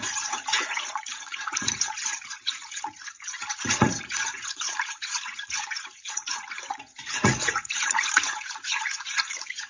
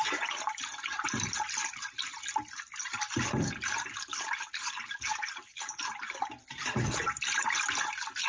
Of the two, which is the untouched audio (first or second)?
second